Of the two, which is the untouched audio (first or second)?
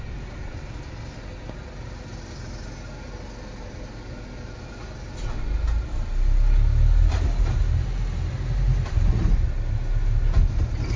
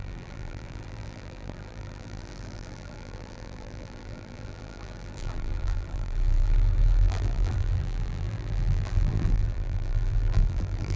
first